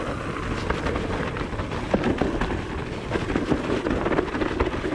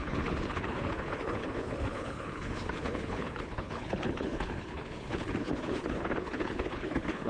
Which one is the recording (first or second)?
first